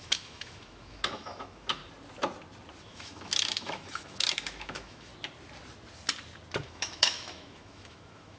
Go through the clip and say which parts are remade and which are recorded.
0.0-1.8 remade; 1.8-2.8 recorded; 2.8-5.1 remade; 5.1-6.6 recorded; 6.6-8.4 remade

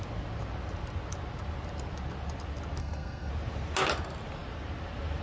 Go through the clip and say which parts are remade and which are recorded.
0.0-2.8 recorded; 2.8-3.3 remade; 3.3-5.2 recorded

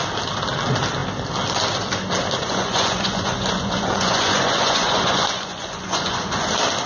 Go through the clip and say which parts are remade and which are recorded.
0.0-2.4 recorded; 2.4-6.5 remade; 6.5-6.9 recorded

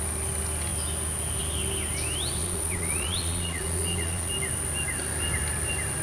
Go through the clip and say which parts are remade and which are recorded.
0.0-2.4 recorded; 2.4-4.3 remade; 4.3-6.0 recorded